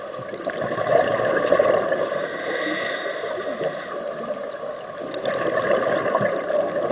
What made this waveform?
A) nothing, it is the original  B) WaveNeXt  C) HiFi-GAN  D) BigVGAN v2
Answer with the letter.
A